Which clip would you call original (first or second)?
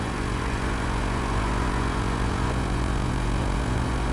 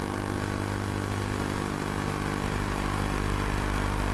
second